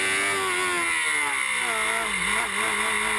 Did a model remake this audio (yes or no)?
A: no